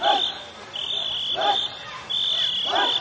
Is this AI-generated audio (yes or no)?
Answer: no